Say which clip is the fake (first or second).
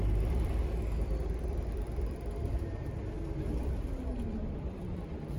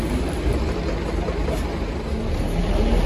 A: first